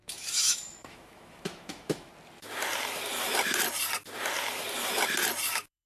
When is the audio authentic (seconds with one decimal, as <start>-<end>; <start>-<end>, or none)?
2.1-5.5